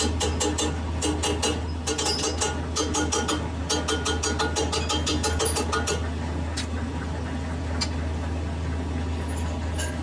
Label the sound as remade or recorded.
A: recorded